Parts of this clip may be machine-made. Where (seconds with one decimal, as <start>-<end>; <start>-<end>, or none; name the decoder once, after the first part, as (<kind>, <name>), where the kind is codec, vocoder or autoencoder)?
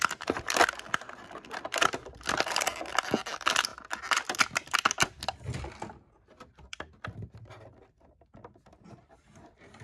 none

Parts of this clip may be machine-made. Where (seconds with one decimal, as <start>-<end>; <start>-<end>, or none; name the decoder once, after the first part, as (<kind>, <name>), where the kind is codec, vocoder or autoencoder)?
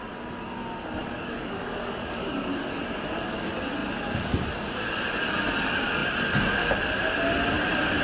1.0-2.6 (codec, DAC)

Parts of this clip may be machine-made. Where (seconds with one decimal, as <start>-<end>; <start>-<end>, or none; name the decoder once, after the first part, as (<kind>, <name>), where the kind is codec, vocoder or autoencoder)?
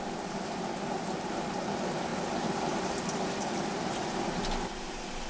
none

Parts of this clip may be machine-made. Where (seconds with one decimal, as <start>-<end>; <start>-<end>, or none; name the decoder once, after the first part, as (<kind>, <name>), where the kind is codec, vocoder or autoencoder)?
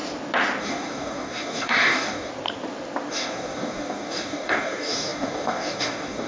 0.6-2.3 (codec, DAC); 3.1-6.3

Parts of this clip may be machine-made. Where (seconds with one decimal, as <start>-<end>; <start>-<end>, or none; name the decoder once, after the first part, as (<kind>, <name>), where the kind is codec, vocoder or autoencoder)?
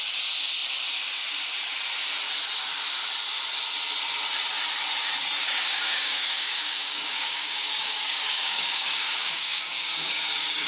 5.4-10.7 (codec, DAC)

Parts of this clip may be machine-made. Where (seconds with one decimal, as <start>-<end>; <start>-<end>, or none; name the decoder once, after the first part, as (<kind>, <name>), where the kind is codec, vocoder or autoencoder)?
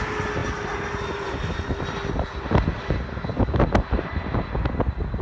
none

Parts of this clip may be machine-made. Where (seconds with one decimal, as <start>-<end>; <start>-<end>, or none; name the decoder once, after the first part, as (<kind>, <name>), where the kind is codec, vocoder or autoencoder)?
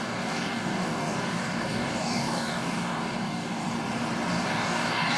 0.0-3.6 (codec, DAC); 4.3-5.2